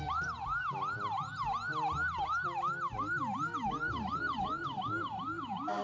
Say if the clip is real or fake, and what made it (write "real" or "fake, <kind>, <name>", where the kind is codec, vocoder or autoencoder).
real